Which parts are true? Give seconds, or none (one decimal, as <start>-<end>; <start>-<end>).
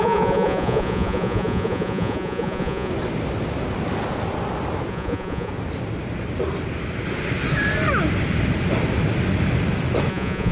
2.9-4.9; 5.5-10.1